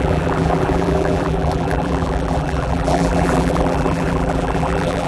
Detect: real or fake fake